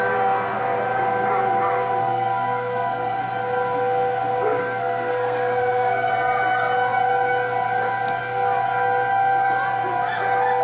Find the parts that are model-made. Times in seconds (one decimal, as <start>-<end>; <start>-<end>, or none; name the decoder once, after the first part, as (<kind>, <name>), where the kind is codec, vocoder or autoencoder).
2.0-3.2 (codec, SNAC); 4.6-6.1